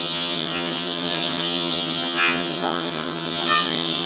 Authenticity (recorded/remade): remade